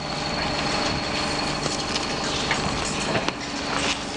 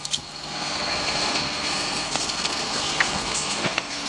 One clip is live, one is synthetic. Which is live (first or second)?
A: first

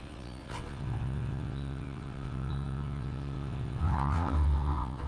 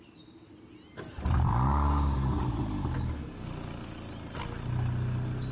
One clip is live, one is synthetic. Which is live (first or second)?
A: second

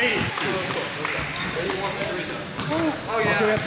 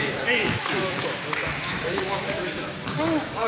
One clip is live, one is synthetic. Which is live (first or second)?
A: first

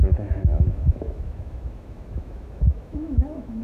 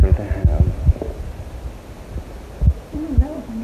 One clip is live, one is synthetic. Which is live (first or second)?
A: second